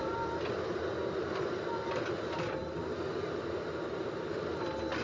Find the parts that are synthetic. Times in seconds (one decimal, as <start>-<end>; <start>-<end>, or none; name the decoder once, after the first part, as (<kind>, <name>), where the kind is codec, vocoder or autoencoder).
none